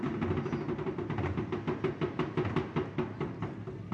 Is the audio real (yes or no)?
yes